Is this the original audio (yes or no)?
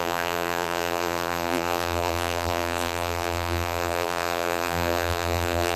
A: no